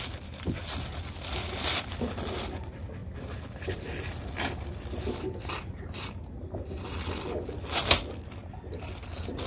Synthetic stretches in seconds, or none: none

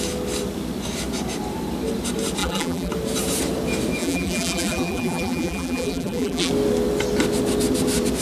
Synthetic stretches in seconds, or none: 2.4-2.9 (vocoder, BigVGAN v2); 4.0-6.5

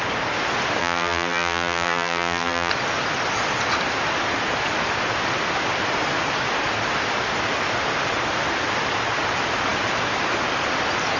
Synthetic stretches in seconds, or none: 0.8-2.7 (vocoder, BigVGAN v2)